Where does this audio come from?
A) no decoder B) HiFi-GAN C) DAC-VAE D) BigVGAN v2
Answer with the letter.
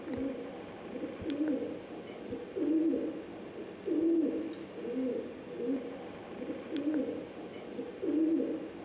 A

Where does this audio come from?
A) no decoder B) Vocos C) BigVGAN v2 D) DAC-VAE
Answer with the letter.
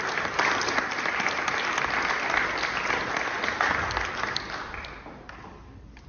A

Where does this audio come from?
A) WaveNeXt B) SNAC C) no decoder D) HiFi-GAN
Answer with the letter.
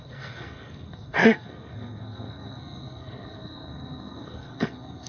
B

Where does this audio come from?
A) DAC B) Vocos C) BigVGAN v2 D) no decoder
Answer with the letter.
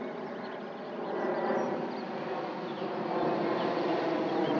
D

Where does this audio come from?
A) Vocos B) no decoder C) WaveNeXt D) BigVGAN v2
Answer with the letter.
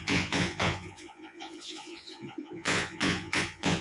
A